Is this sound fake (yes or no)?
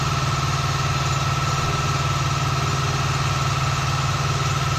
no